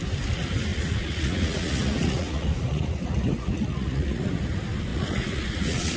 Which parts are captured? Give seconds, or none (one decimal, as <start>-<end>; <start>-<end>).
0.0-0.7; 4.3-4.9